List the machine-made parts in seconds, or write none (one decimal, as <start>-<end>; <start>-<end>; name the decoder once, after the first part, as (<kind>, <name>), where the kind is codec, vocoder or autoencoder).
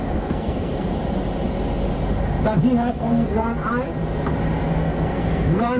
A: 0.0-0.9 (codec, SNAC); 2.9-3.5; 4.7-5.8